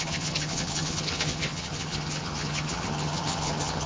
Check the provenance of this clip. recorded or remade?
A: remade